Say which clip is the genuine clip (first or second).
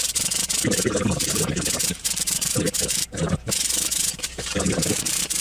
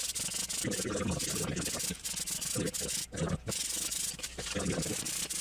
second